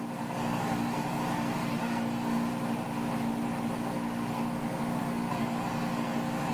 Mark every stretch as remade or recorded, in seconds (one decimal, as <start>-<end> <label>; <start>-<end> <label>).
0.0-2.5 remade; 2.5-3.7 recorded; 3.7-6.5 remade